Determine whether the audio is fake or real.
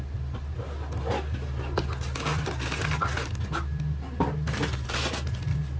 real